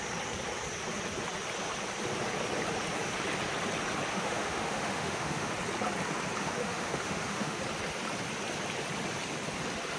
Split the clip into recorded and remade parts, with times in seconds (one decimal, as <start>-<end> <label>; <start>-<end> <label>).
0.0-4.1 recorded; 4.1-5.5 remade; 5.5-6.4 recorded; 6.4-7.6 remade; 7.6-10.0 recorded